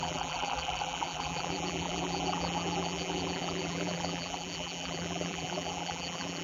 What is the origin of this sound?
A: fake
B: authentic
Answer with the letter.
A